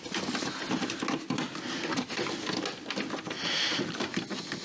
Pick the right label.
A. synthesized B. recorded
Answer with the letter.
B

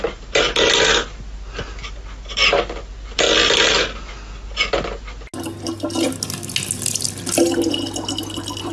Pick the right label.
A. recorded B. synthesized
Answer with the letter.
A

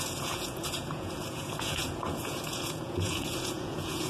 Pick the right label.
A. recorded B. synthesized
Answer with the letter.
B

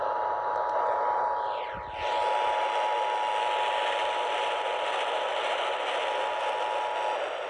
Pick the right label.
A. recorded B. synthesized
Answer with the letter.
A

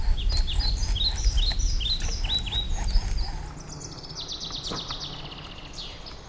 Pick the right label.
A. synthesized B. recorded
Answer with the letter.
B